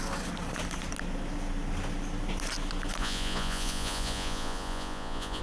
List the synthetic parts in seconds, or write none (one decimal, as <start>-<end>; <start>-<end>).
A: 3.0-5.4

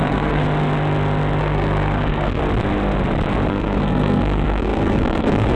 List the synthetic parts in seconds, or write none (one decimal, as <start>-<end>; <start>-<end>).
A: 0.0-0.4; 1.4-2.4; 3.5-5.6

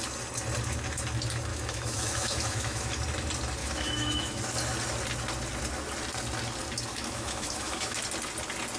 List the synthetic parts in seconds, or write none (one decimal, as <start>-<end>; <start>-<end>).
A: 1.5-2.9; 3.6-4.4; 6.9-8.0